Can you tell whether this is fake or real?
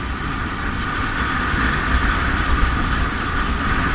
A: real